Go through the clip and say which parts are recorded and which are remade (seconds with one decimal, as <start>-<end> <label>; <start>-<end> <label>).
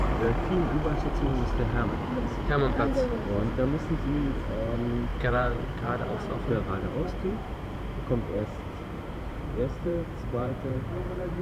0.0-1.3 remade; 1.3-1.9 recorded; 1.9-11.4 remade